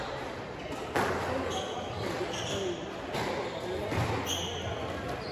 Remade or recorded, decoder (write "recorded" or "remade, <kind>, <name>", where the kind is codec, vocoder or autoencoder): recorded